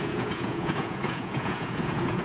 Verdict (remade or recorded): remade